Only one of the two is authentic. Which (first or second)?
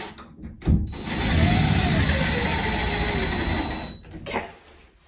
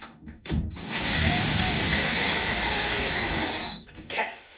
first